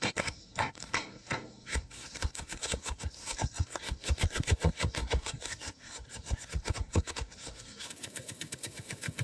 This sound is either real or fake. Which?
fake